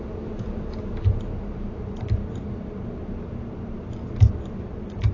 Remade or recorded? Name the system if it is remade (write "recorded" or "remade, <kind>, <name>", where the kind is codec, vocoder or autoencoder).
remade, vocoder, BigVGAN v2